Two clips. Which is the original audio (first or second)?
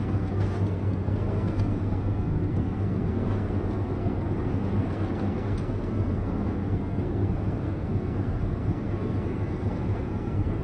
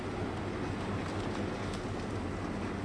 second